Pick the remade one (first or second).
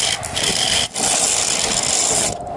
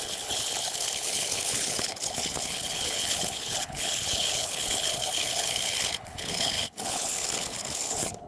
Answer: second